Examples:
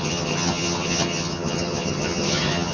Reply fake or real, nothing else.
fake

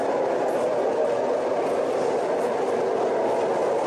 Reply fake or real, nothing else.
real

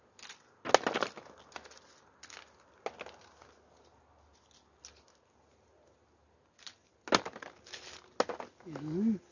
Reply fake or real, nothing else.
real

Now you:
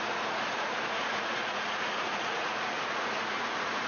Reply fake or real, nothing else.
fake